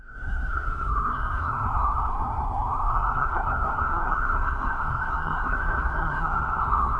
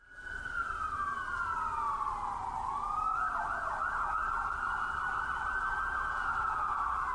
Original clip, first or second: second